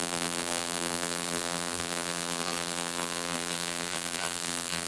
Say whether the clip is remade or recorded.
remade